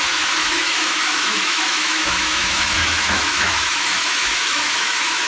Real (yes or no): no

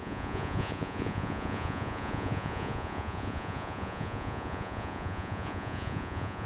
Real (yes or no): no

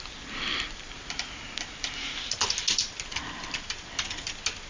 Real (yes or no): yes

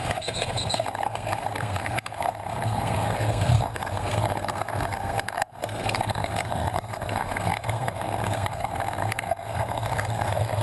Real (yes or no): no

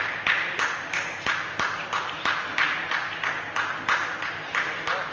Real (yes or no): yes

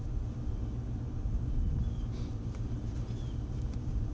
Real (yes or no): no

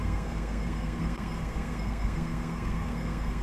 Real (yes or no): no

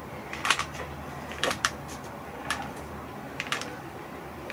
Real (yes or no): no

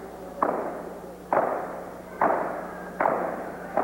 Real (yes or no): yes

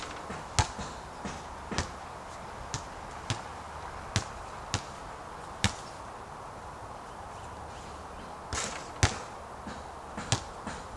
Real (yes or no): yes